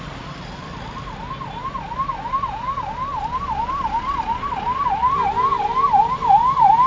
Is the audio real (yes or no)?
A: yes